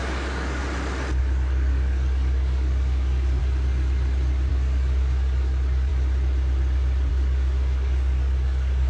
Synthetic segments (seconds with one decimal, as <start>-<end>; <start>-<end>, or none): 0.0-0.6; 1.2-3.4; 4.5-5.9; 7.1-8.9